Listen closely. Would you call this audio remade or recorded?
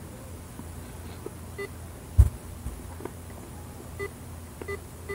recorded